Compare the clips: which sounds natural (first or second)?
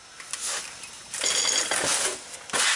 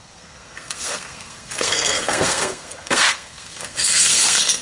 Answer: first